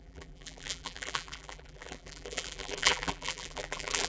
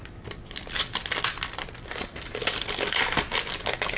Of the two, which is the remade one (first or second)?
first